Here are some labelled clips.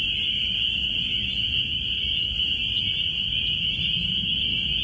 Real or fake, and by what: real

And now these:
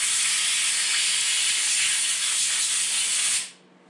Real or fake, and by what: real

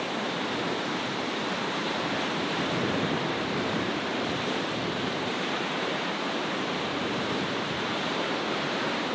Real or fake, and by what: fake, vocoder, BigVGAN v2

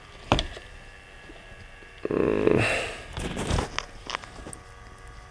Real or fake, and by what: real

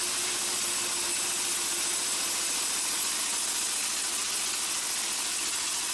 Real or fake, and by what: real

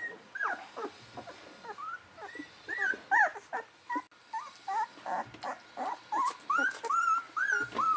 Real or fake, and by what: real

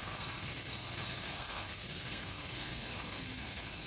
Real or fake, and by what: fake, codec, SNAC